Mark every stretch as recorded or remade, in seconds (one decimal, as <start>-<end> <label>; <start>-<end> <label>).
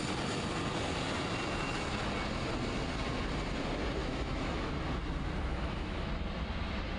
0.0-4.0 recorded; 4.0-4.7 remade; 4.7-5.5 recorded; 5.5-6.1 remade; 6.1-7.0 recorded